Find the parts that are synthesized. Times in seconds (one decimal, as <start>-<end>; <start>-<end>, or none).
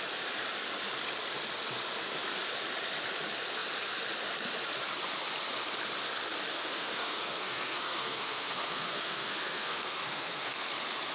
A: 6.5-10.7